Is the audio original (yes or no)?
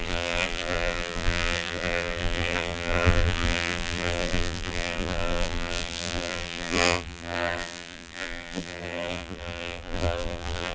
no